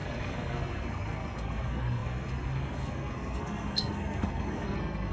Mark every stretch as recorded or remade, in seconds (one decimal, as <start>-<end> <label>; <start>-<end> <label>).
0.0-5.1 remade